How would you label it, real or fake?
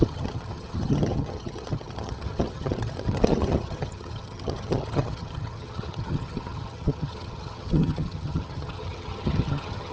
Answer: fake